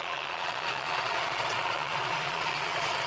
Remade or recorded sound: remade